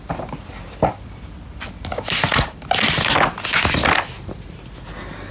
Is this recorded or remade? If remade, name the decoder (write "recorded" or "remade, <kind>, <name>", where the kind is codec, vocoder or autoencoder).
recorded